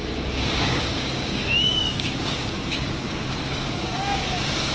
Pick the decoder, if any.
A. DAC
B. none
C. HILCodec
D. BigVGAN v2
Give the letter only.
A